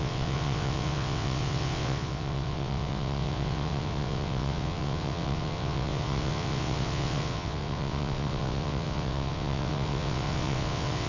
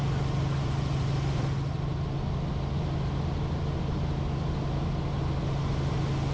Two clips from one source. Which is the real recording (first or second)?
second